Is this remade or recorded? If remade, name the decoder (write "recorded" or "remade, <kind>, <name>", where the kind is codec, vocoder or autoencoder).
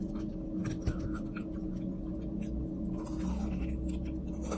recorded